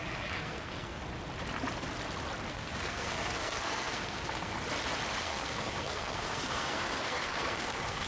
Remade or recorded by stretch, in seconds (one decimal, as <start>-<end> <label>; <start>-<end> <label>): 0.0-1.0 remade; 1.0-2.5 recorded; 2.5-4.5 remade; 4.5-5.2 recorded; 5.2-8.1 remade